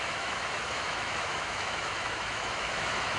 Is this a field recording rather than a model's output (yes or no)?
no